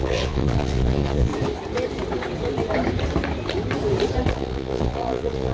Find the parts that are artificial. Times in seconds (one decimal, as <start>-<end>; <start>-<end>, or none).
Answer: 0.0-1.3; 4.3-5.5